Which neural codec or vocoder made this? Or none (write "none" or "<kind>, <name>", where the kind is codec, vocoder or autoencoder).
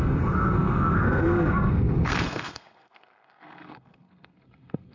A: codec, SNAC